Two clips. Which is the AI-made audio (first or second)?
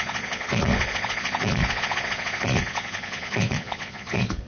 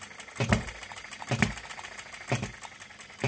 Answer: first